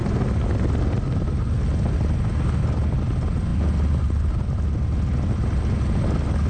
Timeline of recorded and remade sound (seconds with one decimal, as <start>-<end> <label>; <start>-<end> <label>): 0.0-6.5 recorded